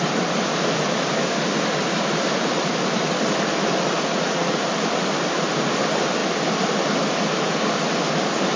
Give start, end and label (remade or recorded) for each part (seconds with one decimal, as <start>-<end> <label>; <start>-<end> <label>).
0.0-4.1 recorded; 4.1-4.6 remade; 4.6-8.6 recorded